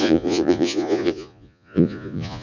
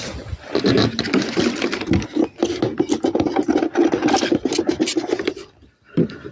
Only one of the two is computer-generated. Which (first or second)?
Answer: first